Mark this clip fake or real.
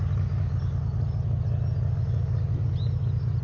real